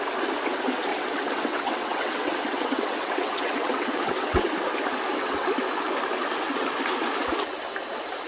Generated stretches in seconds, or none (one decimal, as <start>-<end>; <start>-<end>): 0.9-4.5; 5.1-5.6